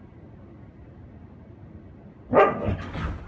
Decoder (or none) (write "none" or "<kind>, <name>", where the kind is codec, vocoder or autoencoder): none